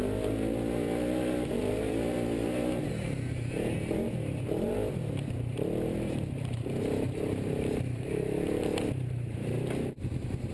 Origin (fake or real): fake